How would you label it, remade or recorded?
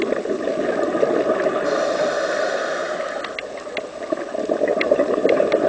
recorded